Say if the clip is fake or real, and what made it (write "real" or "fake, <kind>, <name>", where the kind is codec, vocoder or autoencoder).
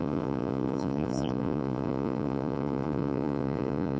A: fake, vocoder, Vocos